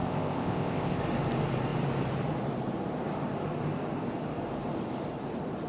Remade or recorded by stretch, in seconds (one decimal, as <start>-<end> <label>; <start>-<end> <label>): 0.0-1.0 remade; 1.0-5.7 recorded